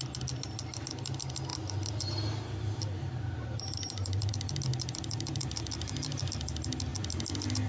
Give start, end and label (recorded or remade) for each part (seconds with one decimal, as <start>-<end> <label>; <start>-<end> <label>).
0.0-1.5 recorded; 1.5-4.3 remade; 4.3-4.7 recorded; 4.7-6.3 remade; 6.3-7.7 recorded